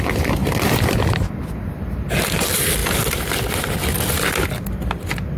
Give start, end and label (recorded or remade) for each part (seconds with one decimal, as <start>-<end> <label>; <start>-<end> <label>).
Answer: 0.0-5.4 recorded